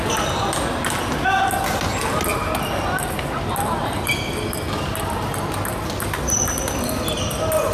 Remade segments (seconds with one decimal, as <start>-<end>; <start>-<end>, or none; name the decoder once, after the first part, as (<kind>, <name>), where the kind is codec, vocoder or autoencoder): none